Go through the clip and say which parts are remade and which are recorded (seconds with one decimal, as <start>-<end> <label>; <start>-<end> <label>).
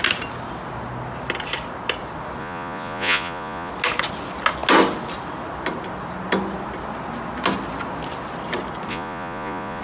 0.0-2.4 recorded; 2.4-3.7 remade; 3.7-8.9 recorded; 8.9-9.8 remade